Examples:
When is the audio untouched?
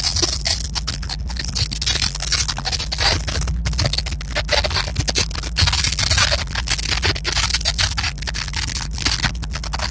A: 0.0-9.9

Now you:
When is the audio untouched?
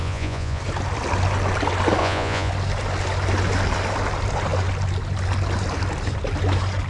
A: 0.6-2.0; 2.5-6.9